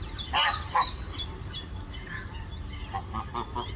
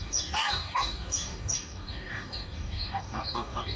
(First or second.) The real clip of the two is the first